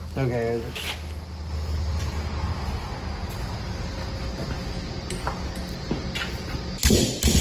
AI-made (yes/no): no